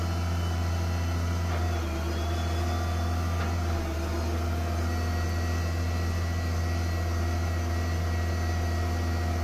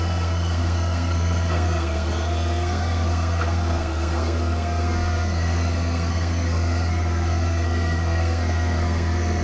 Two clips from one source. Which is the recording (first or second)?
first